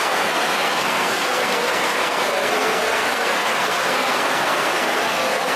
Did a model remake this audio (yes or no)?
yes